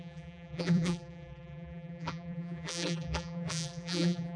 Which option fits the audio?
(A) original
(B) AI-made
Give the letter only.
B